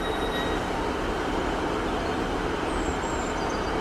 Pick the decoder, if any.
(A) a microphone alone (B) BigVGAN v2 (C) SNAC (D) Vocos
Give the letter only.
B